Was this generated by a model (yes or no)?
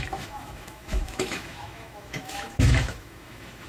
yes